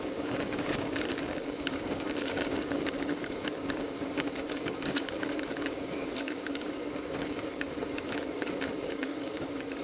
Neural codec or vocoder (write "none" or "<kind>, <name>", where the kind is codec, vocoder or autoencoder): codec, DAC